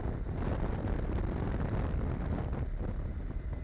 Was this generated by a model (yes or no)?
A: no